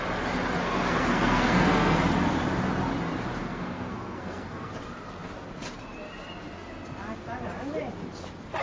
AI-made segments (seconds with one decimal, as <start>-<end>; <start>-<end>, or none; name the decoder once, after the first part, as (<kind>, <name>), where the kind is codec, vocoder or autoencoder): 0.6-2.0 (codec, SNAC); 3.4-4.7